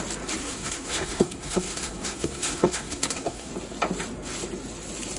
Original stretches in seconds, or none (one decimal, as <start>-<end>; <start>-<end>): 0.0-0.4; 3.5-5.2